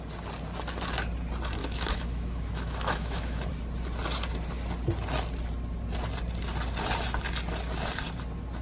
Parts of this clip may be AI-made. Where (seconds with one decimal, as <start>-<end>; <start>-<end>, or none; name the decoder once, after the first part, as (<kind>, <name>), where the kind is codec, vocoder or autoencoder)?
1.6-3.5 (autoencoder, DAC-VAE)